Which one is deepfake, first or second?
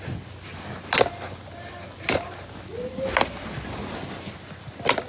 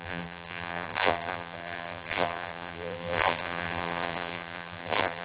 second